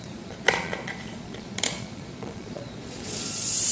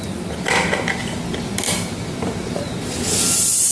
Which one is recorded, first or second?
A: second